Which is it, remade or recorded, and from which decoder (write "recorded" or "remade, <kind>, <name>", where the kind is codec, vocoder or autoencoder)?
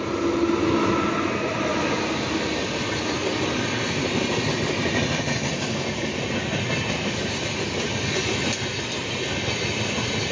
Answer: recorded